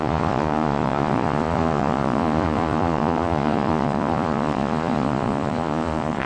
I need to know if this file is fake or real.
fake